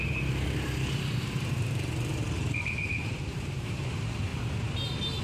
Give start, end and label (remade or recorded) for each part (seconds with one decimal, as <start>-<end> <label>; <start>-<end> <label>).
0.0-4.3 remade; 4.3-5.2 recorded